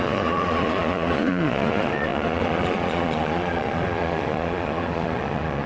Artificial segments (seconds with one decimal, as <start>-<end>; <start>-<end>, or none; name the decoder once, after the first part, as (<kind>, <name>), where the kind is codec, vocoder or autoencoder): 0.0-5.7 (vocoder, Vocos)